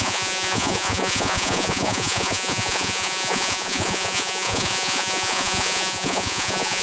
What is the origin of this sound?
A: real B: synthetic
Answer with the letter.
B